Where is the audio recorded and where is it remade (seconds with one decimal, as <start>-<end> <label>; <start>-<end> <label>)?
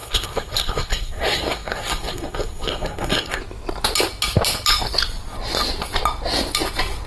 0.0-3.4 remade; 3.4-7.1 recorded